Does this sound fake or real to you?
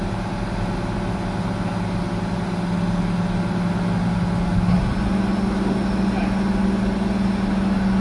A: real